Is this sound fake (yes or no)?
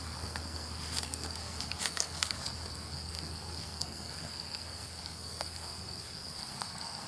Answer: yes